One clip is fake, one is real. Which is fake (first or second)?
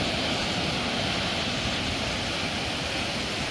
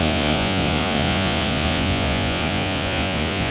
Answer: second